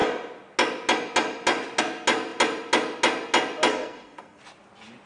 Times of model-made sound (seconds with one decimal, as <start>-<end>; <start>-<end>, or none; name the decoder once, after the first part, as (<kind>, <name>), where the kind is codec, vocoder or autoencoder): 3.7-4.4 (codec, SNAC)